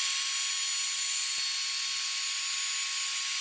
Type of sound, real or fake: real